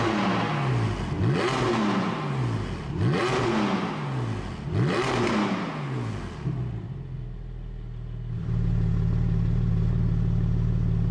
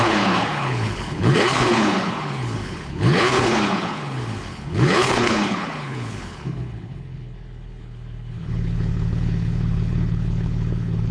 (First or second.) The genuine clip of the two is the first